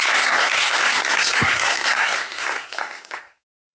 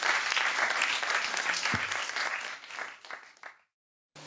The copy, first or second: first